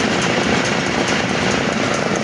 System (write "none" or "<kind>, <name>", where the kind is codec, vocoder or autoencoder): none